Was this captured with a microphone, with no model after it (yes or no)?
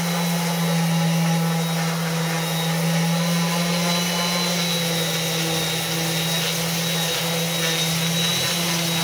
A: yes